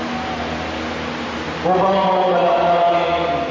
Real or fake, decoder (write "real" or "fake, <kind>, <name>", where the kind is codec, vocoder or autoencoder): real